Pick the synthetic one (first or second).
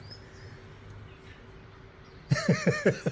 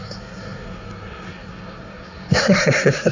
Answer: second